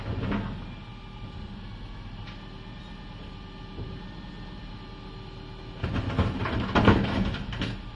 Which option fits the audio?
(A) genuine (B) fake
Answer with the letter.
A